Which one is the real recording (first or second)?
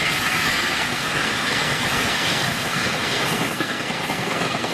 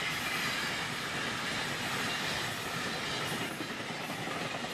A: second